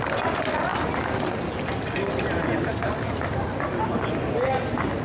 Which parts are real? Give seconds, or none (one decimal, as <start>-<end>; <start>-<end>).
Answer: 0.0-5.0